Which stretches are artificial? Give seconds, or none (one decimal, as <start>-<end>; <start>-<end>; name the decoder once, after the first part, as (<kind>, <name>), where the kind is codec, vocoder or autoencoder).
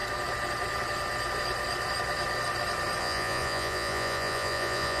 3.0-5.0 (vocoder, Vocos)